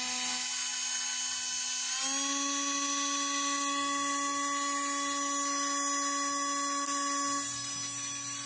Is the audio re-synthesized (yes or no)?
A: no